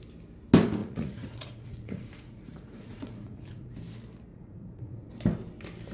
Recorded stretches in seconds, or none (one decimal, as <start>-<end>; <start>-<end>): 0.0-0.8; 3.7-4.3; 5.1-5.9